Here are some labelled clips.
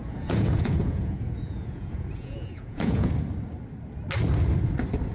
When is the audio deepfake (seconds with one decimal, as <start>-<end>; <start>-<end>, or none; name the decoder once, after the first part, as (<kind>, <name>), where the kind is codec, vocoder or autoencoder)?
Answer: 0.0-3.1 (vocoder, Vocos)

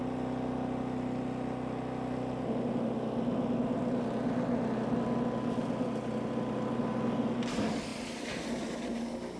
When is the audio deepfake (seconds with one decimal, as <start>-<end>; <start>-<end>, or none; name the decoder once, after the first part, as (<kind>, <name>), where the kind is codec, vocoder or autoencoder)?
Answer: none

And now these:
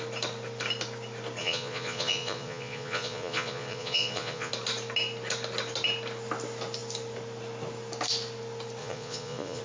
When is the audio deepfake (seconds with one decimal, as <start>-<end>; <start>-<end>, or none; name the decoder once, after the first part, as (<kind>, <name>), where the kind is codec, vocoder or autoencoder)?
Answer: 1.4-4.5 (vocoder, Vocos); 8.8-9.6

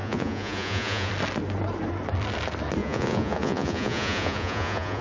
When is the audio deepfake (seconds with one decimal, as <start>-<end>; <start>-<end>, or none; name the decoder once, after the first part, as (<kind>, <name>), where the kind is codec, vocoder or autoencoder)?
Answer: 0.0-1.1 (vocoder, Vocos); 2.8-5.0

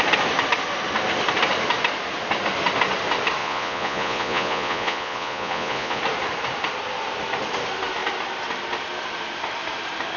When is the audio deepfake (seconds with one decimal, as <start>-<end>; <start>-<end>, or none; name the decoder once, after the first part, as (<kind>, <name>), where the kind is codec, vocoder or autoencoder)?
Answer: 3.4-6.0 (vocoder, Vocos)